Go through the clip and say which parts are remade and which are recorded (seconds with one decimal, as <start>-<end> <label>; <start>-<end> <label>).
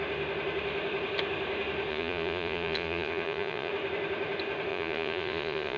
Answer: 0.0-1.9 recorded; 1.9-3.7 remade; 3.7-4.7 recorded; 4.7-5.8 remade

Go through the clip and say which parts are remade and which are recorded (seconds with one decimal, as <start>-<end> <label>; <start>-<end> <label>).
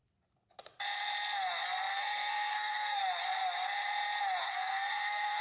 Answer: 0.0-1.9 recorded; 1.9-3.0 remade; 3.0-4.4 recorded; 4.4-5.4 remade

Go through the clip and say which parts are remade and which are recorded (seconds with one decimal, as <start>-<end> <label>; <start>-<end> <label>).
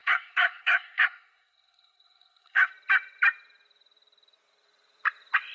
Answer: 0.0-2.7 remade; 2.7-5.5 recorded